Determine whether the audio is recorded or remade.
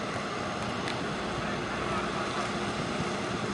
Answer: recorded